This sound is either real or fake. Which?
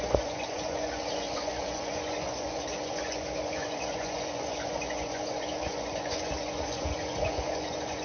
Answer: fake